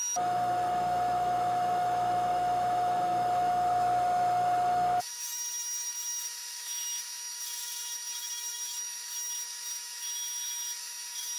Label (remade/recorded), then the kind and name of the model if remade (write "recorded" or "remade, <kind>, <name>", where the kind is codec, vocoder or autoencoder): remade, autoencoder, DAC-VAE